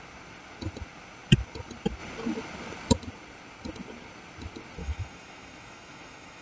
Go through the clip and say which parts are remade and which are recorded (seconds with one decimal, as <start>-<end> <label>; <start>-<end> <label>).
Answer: 0.0-4.8 recorded; 4.8-6.4 remade